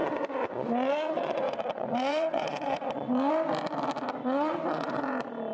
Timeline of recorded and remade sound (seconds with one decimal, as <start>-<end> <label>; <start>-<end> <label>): 0.0-3.3 remade; 3.3-4.2 recorded; 4.2-5.0 remade; 5.0-5.5 recorded